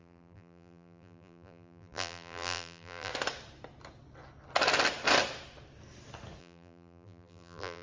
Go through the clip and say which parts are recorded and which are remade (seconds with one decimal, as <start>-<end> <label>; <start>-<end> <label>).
0.0-3.1 remade; 3.1-6.4 recorded; 6.4-7.8 remade